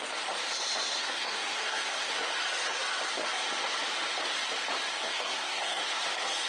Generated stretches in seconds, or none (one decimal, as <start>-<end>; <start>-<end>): 1.0-2.1; 5.0-5.8